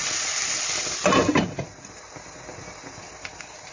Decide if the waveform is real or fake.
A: real